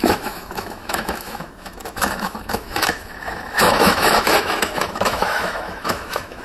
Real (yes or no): no